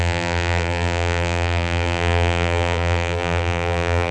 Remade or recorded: remade